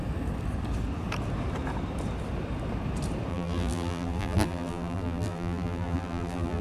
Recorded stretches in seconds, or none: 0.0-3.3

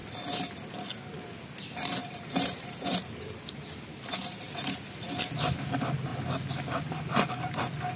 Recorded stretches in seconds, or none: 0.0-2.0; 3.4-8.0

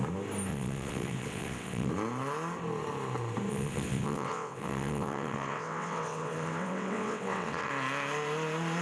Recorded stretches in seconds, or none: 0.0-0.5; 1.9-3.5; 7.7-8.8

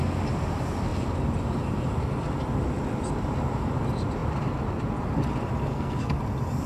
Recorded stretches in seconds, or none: 0.0-5.7; 6.2-6.7

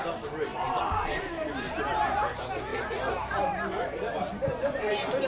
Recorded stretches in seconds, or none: none

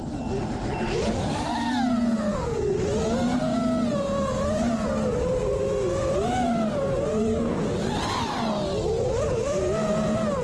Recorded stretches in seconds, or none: 0.0-10.4

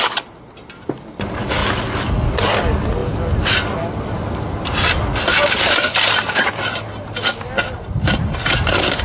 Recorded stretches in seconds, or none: 0.0-9.0